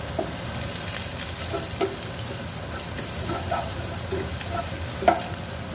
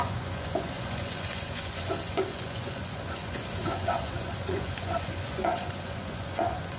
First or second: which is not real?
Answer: second